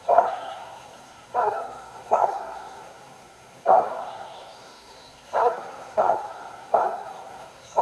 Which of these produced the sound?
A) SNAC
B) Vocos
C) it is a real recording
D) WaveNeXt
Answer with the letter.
A